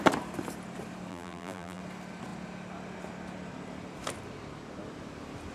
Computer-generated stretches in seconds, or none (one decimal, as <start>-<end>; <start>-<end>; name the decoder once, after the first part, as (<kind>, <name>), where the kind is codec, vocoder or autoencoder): 1.1-1.8 (vocoder, BigVGAN v2)